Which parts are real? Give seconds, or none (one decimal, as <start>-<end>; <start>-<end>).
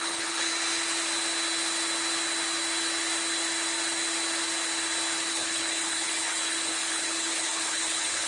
0.5-5.3